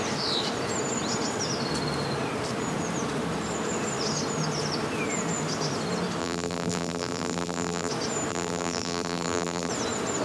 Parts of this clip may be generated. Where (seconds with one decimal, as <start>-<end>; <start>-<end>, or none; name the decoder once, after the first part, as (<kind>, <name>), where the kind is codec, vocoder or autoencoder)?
6.2-7.9 (vocoder, BigVGAN v2); 8.3-9.7